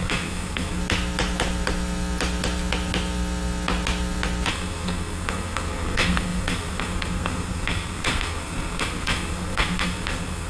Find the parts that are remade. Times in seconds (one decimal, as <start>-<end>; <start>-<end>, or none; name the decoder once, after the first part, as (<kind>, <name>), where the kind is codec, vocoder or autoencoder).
0.0-0.8 (codec, SNAC); 4.5-10.5